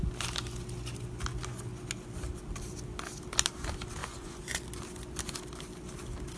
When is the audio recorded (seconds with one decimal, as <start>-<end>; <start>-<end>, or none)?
0.0-4.0; 4.6-6.4